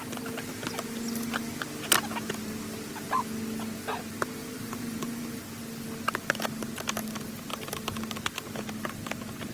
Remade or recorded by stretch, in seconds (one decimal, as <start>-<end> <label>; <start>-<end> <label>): 0.0-4.4 recorded; 4.4-5.4 remade; 5.4-7.5 recorded; 7.5-8.0 remade; 8.0-9.5 recorded